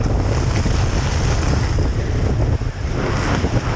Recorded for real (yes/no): yes